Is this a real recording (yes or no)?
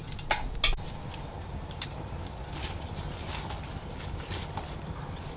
yes